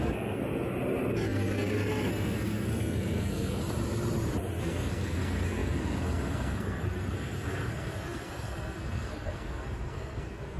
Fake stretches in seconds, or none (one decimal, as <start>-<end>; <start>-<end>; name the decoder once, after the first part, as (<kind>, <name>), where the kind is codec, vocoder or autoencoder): 0.0-0.4 (codec, SNAC); 1.1-3.6; 4.6-10.6